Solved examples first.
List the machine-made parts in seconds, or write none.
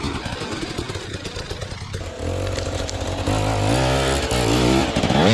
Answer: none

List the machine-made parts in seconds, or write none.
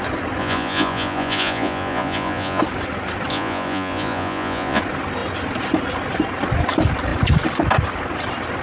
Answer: 0.4-2.6 (vocoder, Vocos); 3.3-4.8